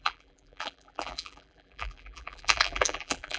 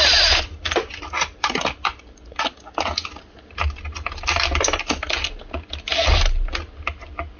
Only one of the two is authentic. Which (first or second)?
second